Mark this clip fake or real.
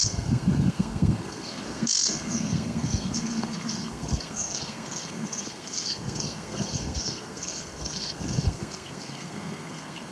fake